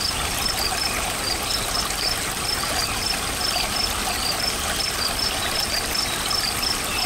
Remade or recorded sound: recorded